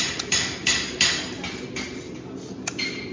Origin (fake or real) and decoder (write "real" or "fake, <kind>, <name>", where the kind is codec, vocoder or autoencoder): real